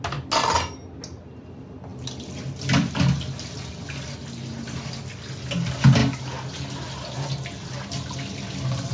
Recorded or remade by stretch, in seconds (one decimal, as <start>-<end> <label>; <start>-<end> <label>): 0.0-8.9 recorded